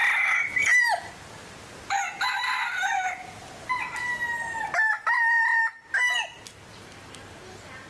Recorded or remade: recorded